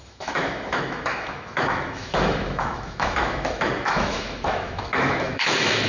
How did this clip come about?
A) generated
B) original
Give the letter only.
A